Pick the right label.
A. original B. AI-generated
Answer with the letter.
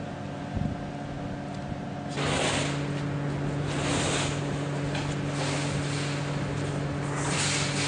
A